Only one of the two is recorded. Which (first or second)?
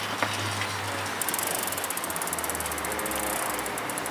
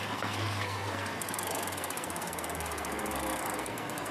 first